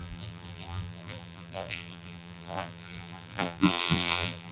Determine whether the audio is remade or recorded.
remade